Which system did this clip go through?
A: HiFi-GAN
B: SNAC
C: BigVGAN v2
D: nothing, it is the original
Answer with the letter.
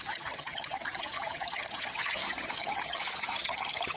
A